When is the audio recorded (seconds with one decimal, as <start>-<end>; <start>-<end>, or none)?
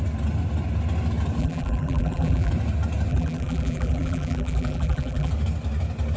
0.0-1.4; 2.5-3.1; 5.3-6.2